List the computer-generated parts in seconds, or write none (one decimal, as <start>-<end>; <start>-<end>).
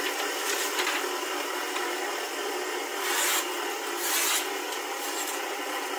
none